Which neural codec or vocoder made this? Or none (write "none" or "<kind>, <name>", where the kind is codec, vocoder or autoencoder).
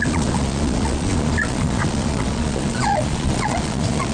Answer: vocoder, Vocos